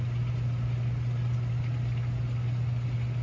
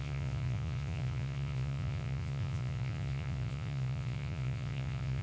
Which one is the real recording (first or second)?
first